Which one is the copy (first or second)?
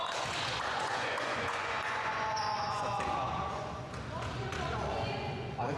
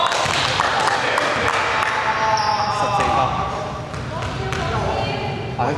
first